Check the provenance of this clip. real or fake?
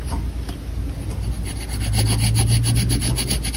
real